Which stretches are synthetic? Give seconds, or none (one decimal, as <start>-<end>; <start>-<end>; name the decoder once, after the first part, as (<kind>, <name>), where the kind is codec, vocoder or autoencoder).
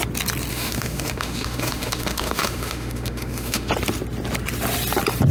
0.5-3.7 (autoencoder, DAC-VAE)